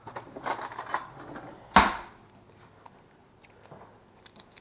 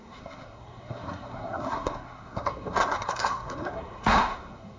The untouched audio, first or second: first